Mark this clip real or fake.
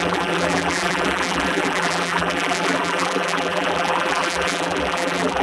fake